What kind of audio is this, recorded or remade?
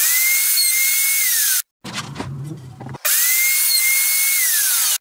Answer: recorded